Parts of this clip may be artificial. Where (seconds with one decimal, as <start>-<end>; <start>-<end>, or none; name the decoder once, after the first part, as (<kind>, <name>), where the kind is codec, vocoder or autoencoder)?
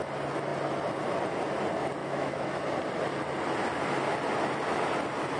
2.0-2.6 (autoencoder, DAC-VAE)